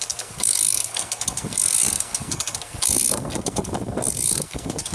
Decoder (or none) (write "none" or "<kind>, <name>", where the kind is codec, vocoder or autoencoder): codec, SNAC